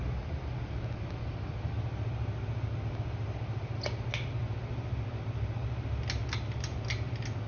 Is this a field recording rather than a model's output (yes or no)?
yes